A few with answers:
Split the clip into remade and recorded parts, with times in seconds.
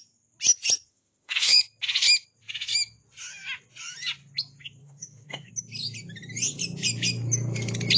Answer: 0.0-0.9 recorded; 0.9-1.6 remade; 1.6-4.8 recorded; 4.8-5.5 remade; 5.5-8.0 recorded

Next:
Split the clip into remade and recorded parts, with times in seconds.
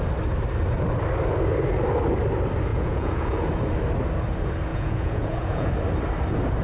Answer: 0.0-2.7 recorded; 2.7-3.5 remade; 3.5-4.7 recorded; 4.7-5.7 remade; 5.7-6.6 recorded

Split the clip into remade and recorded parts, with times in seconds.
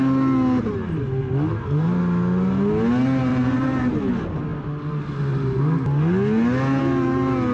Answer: 0.0-1.5 recorded; 1.5-2.0 remade; 2.0-3.3 recorded; 3.3-4.0 remade; 4.0-7.5 recorded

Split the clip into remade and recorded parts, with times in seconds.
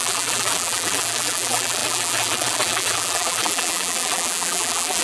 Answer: 0.0-5.0 remade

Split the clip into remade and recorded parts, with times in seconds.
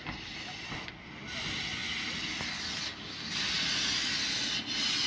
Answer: 0.0-5.1 recorded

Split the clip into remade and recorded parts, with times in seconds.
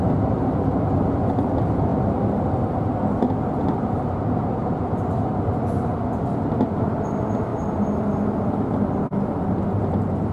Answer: 0.0-7.5 remade; 7.5-8.4 recorded; 8.4-10.3 remade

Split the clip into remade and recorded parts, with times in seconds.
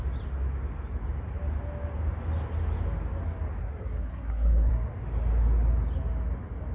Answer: 0.0-3.6 recorded; 3.6-4.7 remade; 4.7-6.7 recorded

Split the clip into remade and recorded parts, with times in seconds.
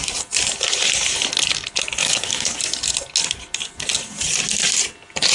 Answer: 0.0-2.0 recorded; 2.0-2.6 remade; 2.6-5.3 recorded